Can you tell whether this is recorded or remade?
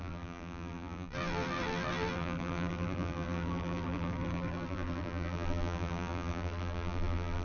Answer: remade